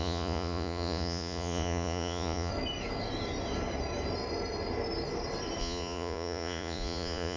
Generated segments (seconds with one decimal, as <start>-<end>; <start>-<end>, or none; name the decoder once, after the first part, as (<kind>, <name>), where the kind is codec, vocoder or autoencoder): 0.0-2.5 (vocoder, Vocos); 5.6-7.4